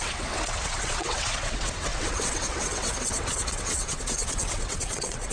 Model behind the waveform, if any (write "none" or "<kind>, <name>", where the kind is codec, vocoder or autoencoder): vocoder, WaveNeXt